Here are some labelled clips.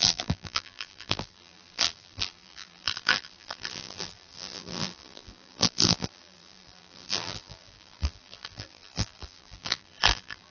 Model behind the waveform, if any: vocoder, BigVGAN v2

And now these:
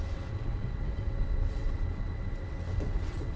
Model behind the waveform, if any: vocoder, WaveNeXt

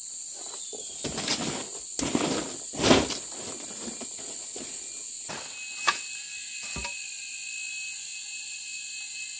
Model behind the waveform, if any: none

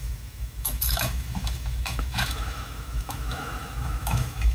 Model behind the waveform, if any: autoencoder, DAC-VAE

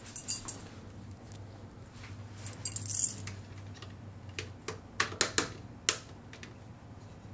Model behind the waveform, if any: none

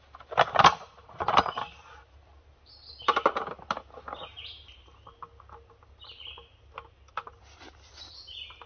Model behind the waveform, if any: none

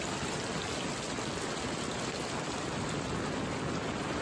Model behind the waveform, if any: none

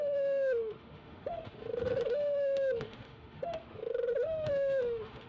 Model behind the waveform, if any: autoencoder, DAC-VAE